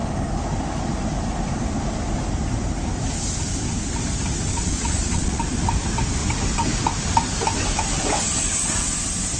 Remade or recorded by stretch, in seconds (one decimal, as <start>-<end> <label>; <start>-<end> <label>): 0.0-4.5 recorded; 4.5-5.4 remade; 5.4-9.4 recorded